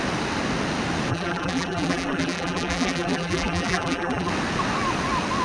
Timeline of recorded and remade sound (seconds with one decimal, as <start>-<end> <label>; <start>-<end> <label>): 0.0-1.1 recorded; 1.1-4.3 remade; 4.3-5.4 recorded